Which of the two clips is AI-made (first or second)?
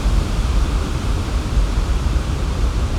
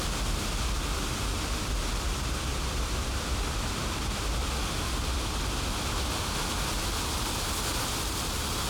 first